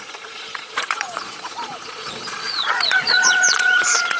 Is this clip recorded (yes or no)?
no